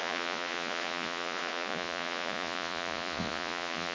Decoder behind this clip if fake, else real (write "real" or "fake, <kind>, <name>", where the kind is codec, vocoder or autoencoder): fake, vocoder, Vocos